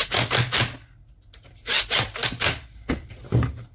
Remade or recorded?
recorded